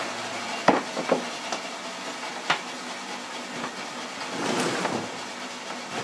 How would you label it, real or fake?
real